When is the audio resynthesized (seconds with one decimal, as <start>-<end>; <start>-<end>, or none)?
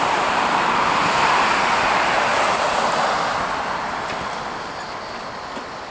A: 0.0-2.3